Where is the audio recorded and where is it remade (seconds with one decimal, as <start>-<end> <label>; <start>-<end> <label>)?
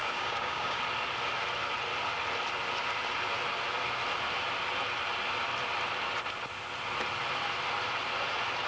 0.0-0.8 remade; 0.8-8.7 recorded